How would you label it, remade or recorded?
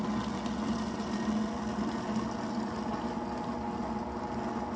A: recorded